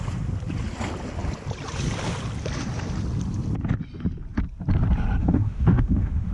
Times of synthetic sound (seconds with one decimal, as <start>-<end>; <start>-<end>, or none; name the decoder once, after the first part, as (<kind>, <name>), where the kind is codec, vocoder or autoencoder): 5.2-6.3 (autoencoder, DAC-VAE)